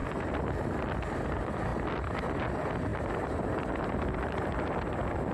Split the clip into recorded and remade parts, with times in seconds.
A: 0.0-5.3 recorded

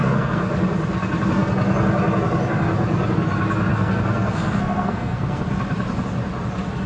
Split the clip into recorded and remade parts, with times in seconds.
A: 0.0-0.5 remade; 0.5-3.7 recorded; 3.7-5.4 remade; 5.4-6.9 recorded